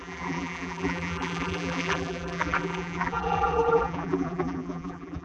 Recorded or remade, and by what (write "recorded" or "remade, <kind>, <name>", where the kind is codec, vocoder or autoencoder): remade, vocoder, BigVGAN v2